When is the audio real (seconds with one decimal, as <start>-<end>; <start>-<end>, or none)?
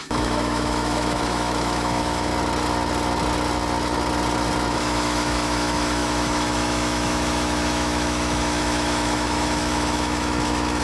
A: 2.3-4.7